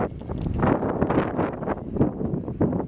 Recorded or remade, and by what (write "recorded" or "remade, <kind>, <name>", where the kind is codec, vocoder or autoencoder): recorded